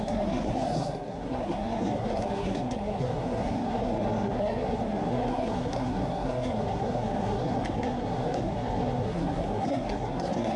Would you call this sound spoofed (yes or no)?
yes